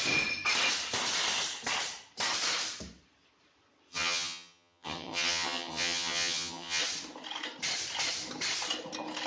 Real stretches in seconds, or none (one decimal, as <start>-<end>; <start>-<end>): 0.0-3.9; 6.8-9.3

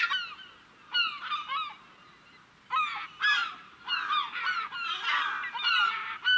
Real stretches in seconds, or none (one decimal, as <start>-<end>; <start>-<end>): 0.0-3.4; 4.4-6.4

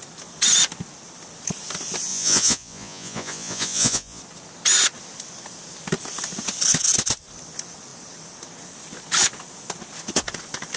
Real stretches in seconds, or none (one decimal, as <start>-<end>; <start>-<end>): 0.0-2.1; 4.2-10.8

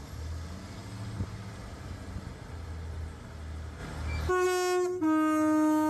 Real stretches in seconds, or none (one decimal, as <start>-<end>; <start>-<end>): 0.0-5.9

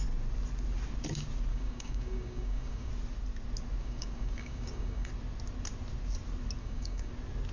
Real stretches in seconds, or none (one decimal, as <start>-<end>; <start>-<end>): 0.0-1.5; 2.9-3.8; 5.1-6.6; 7.1-7.5

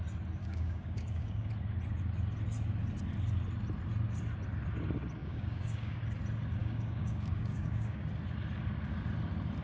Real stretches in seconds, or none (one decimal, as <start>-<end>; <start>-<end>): 0.0-0.4; 1.5-5.2; 6.0-6.6; 8.1-9.6